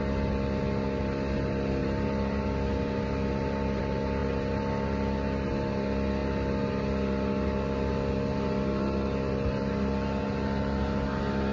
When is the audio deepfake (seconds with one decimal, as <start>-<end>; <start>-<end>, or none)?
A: 1.8-3.8